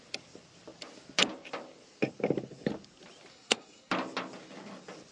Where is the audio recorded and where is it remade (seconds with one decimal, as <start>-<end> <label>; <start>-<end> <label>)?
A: 0.0-3.3 recorded; 3.3-3.9 remade; 3.9-5.1 recorded